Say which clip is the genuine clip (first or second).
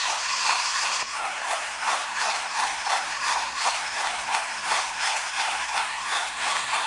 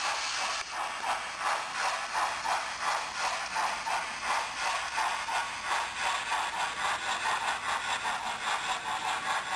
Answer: second